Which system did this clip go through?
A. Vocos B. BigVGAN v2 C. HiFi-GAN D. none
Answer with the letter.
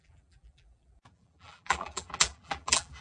B